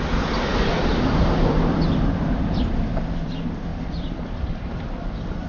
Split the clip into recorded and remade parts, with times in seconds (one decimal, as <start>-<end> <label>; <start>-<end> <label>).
0.0-0.5 recorded; 0.5-3.2 remade; 3.2-3.7 recorded; 3.7-4.7 remade; 4.7-5.5 recorded